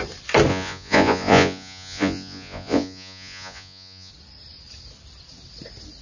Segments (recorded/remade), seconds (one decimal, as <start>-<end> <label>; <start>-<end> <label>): 0.0-0.5 recorded; 0.5-4.1 remade; 4.1-6.0 recorded